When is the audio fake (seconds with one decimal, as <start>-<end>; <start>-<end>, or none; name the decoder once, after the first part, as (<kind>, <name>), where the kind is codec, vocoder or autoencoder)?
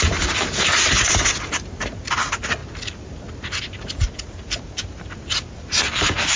0.0-2.6 (vocoder, BigVGAN v2); 3.7-6.4